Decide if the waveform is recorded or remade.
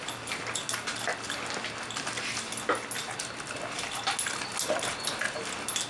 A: recorded